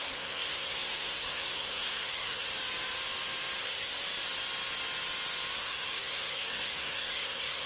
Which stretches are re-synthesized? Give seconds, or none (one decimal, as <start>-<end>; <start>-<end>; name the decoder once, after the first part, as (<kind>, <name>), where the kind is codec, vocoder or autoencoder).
0.0-2.5 (codec, SNAC); 3.6-4.0; 5.6-7.7